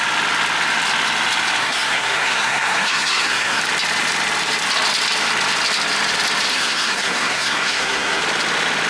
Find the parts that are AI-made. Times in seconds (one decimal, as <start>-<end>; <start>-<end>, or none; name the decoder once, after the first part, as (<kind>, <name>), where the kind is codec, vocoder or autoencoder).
1.6-3.6 (codec, SNAC); 6.5-8.2